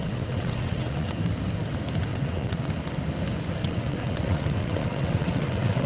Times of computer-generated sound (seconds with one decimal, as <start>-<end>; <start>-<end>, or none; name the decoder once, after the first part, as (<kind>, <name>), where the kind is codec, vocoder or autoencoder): 0.0-1.1 (vocoder, WaveNeXt); 2.1-2.7; 3.6-5.9